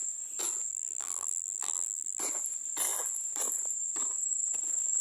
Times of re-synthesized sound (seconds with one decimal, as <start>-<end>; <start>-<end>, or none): 0.7-2.2